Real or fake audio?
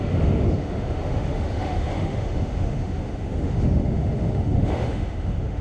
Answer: fake